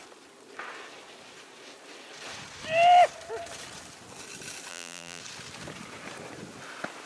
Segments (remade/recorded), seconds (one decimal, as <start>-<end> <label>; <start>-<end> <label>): 0.0-4.7 recorded; 4.7-5.2 remade; 5.2-7.1 recorded